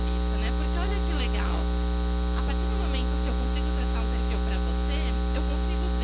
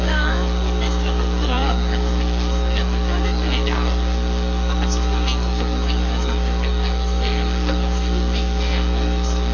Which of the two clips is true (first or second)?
first